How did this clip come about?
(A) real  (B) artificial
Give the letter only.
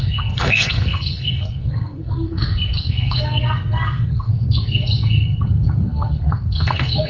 B